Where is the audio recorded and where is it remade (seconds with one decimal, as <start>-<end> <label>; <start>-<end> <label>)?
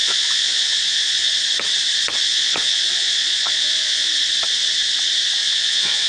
0.0-1.3 remade; 1.3-2.3 recorded; 2.3-4.1 remade; 4.1-5.4 recorded; 5.4-6.1 remade